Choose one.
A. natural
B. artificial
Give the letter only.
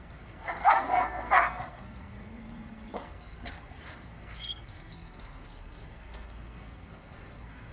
B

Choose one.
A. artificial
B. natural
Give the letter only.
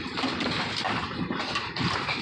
A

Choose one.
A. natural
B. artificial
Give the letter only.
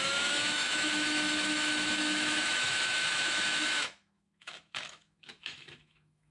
B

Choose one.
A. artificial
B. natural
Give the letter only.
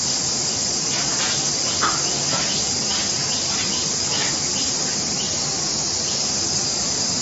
B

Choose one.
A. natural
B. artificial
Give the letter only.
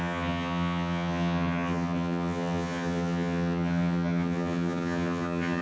B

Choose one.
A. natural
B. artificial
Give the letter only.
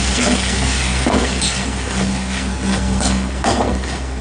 B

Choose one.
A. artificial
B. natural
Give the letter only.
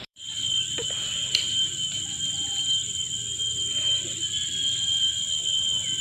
A